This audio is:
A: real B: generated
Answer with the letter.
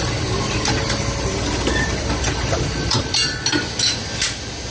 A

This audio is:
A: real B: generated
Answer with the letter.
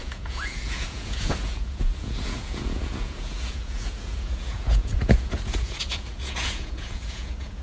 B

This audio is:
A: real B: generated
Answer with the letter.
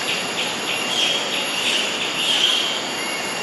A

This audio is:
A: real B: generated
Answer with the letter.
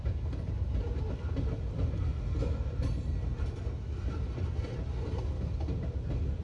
A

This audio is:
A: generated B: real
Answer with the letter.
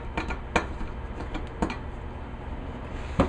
B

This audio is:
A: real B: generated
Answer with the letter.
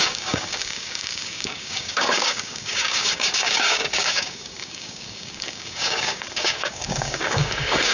B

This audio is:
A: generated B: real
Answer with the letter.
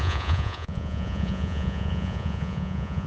A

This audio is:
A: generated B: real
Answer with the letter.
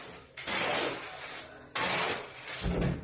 B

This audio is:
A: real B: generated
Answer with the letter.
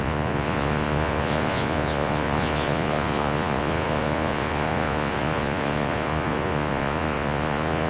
B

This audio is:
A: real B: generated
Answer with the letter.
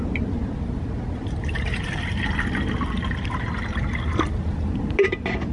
A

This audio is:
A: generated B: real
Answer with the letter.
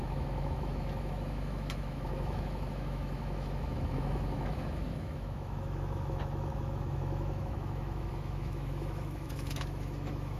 A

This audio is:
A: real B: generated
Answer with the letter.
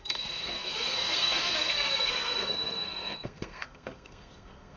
B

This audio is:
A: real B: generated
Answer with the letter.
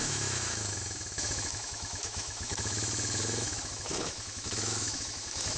B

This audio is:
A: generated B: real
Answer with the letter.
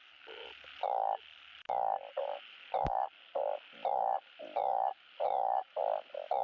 B